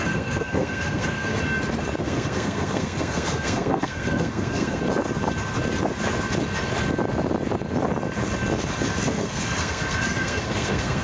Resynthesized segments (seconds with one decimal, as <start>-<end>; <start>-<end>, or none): 0.0-1.3; 2.0-4.8; 9.1-11.0